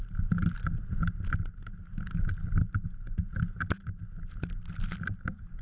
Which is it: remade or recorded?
recorded